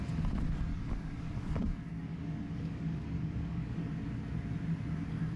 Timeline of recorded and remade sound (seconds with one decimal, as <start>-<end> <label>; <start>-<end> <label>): 0.0-0.7 recorded; 0.7-3.9 remade; 3.9-5.4 recorded